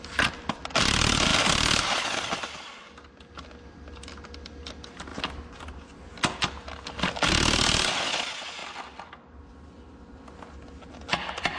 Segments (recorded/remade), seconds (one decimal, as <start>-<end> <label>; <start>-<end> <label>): 0.0-11.6 recorded